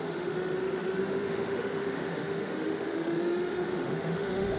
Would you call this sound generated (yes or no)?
yes